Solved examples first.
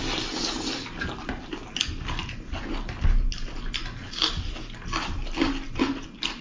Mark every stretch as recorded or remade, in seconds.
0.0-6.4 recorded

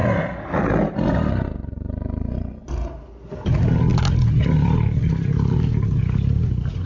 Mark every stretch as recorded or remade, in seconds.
0.0-6.9 recorded

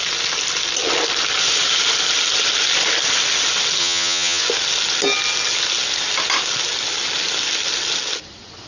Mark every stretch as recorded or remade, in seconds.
0.0-3.8 recorded; 3.8-4.4 remade; 4.4-8.7 recorded

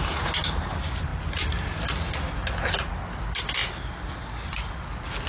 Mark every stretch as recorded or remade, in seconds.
0.0-5.3 recorded

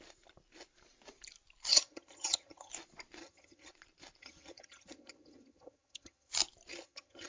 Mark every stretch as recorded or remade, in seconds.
0.0-1.7 recorded; 1.7-2.7 remade; 2.7-3.2 recorded; 3.2-3.7 remade; 3.7-4.2 recorded; 4.2-6.3 remade; 6.3-6.7 recorded; 6.7-7.3 remade